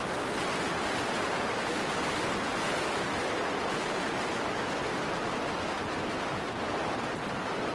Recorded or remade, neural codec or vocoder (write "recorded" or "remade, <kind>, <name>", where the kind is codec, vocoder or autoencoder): recorded